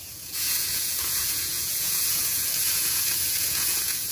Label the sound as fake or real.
fake